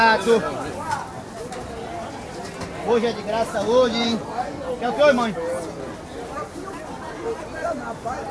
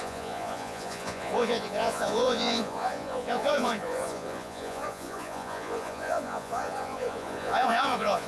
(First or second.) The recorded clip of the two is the first